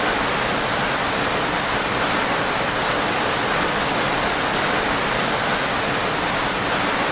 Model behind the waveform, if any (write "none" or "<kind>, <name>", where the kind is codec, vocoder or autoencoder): none